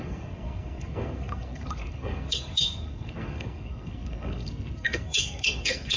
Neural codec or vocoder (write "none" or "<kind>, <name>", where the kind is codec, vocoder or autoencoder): codec, SNAC